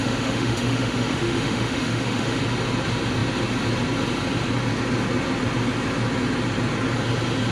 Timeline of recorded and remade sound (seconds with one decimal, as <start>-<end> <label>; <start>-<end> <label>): 0.0-2.4 remade; 2.4-7.5 recorded